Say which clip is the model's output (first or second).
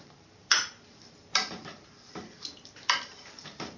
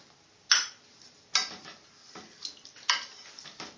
first